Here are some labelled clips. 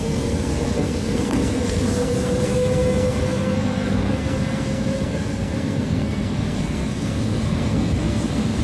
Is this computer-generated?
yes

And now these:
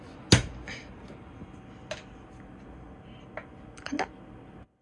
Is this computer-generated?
no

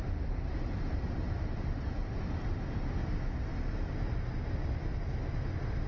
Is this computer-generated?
no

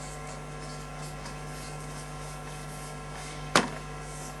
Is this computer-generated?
yes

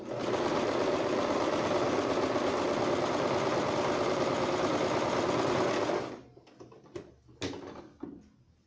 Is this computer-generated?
no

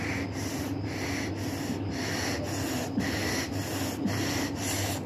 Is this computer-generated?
no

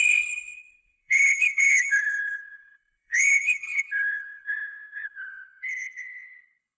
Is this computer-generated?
yes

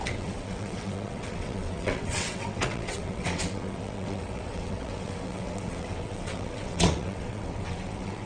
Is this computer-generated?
yes